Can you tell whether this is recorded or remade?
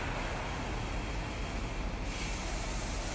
recorded